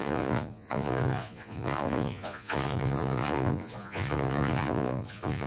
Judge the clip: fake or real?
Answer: fake